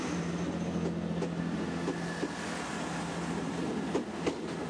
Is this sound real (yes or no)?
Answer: yes